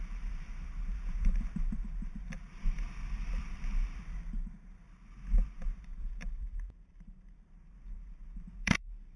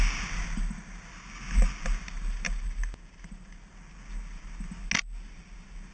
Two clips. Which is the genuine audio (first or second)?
second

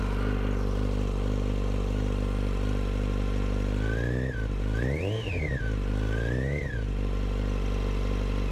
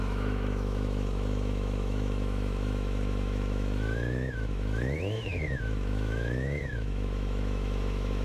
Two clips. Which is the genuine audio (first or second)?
first